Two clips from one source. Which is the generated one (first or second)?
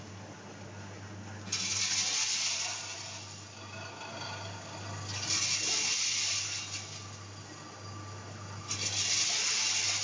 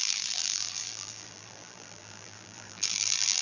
second